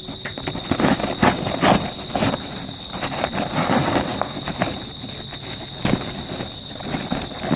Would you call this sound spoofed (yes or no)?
no